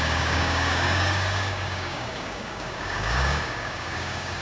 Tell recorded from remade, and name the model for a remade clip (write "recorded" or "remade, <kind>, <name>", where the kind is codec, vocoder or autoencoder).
remade, codec, DAC